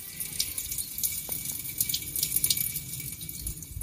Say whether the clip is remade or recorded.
recorded